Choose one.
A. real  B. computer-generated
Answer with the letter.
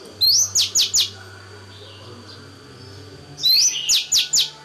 A